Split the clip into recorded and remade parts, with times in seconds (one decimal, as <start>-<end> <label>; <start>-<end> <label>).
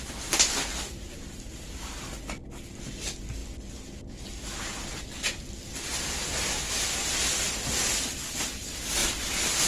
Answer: 0.0-1.5 recorded; 1.5-2.0 remade; 2.0-9.7 recorded